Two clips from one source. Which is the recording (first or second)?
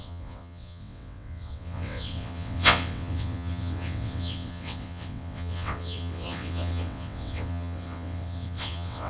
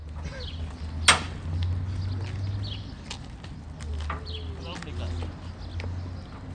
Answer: second